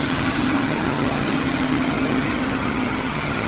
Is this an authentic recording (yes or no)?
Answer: no